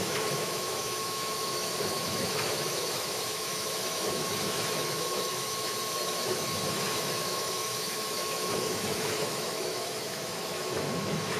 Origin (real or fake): fake